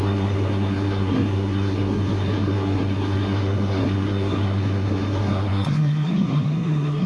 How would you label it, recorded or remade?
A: remade